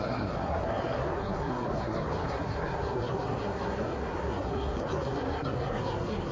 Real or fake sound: fake